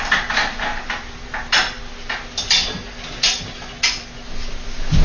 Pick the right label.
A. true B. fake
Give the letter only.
A